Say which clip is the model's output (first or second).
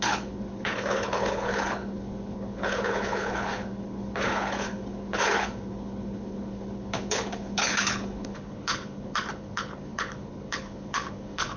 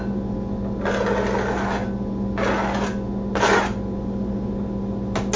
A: first